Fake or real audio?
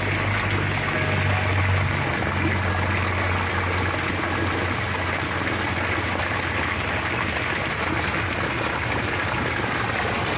real